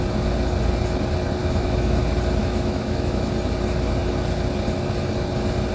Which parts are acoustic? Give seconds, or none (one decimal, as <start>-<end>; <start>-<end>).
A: 0.0-1.4; 2.0-2.4; 3.3-5.7